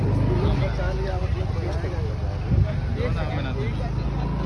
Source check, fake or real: real